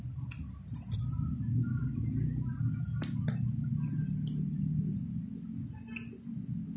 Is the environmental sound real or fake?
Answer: real